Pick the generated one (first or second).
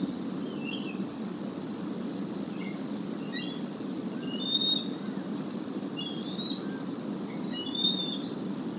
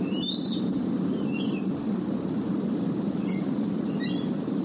second